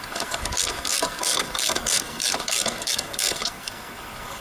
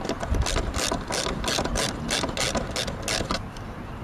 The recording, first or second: second